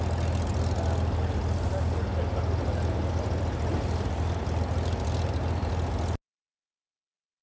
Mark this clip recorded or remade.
recorded